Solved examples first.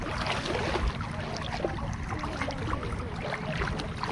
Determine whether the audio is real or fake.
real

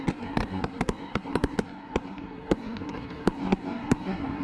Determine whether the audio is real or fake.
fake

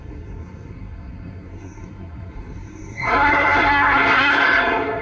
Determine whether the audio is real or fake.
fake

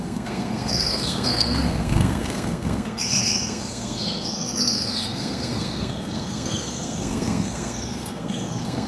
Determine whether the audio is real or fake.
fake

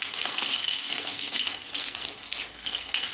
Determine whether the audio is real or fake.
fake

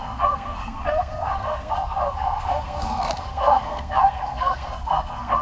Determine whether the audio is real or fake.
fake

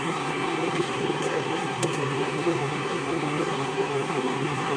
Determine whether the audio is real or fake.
fake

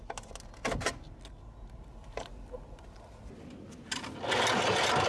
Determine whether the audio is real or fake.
real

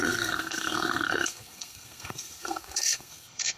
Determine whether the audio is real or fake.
fake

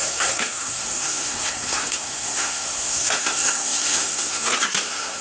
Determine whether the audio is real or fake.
fake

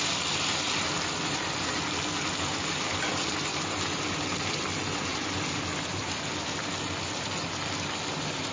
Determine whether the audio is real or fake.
real